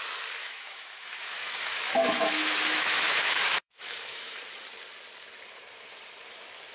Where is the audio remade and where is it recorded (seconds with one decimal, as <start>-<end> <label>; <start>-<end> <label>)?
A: 0.0-0.4 recorded; 0.4-4.4 remade; 4.4-6.7 recorded